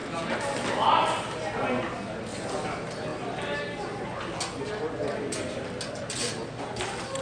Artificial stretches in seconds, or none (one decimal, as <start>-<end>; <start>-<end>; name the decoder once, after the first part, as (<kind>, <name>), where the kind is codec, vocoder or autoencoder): none